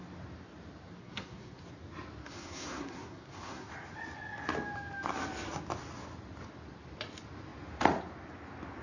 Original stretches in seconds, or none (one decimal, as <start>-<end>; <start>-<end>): 0.0-1.0; 1.6-2.2; 3.7-8.8